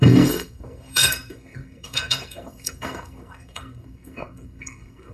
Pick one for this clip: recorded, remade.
remade